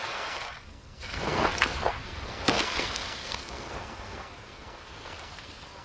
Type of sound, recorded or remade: remade